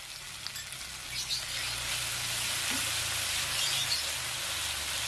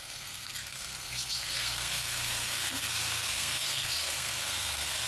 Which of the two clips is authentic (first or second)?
first